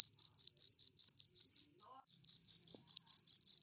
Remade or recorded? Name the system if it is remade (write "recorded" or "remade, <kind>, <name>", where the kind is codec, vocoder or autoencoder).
recorded